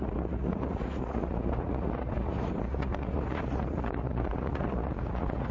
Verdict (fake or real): fake